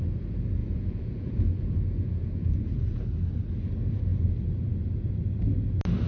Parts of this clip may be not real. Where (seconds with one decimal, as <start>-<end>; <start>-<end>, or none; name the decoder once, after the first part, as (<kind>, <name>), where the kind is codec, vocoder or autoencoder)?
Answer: 0.6-3.0 (vocoder, Vocos)